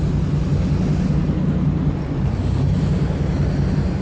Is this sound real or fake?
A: real